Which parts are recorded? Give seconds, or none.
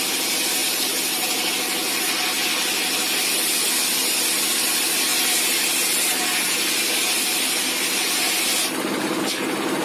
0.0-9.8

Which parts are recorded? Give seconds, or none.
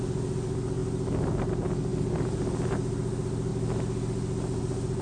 0.0-5.0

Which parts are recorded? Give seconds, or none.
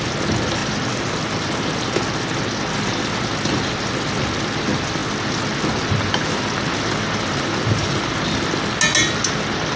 0.0-9.8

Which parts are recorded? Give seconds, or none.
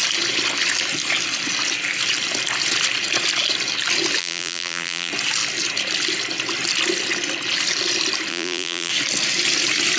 0.0-4.2; 5.1-8.3; 8.9-10.0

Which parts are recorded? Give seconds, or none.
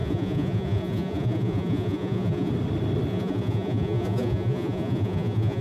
2.5-3.1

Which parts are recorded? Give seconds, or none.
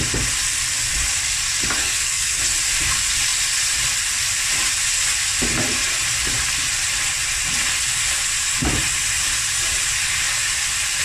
0.0-1.8; 2.4-11.0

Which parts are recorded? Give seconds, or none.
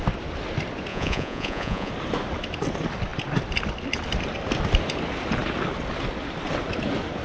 0.0-0.9; 1.9-7.2